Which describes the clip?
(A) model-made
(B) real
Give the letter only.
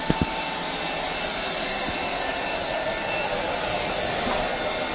B